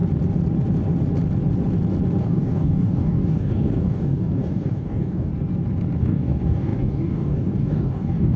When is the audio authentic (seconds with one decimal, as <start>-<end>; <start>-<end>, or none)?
0.0-2.2; 5.3-6.0